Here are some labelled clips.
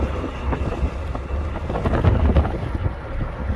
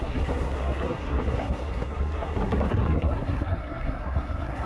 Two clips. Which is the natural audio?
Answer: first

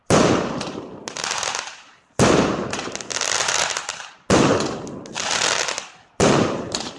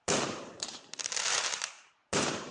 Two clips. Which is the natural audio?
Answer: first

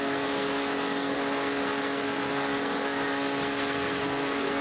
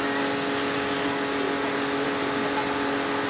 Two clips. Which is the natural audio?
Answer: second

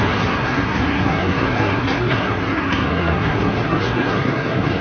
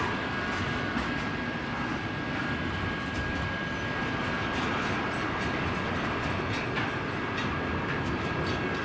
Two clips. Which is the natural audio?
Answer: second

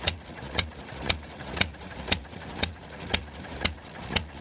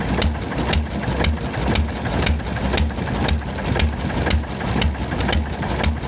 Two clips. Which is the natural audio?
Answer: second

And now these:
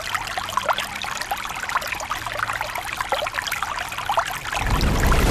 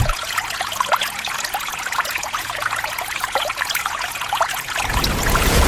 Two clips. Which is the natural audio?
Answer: first